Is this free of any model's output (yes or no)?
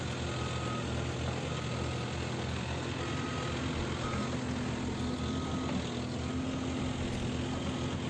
yes